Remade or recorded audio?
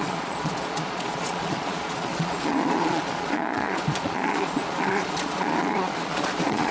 remade